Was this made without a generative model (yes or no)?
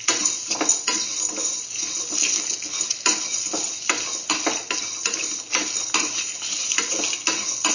yes